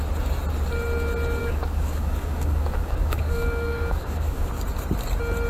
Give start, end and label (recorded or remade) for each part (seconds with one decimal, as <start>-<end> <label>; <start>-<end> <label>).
0.0-1.4 recorded; 1.4-4.5 remade; 4.5-5.5 recorded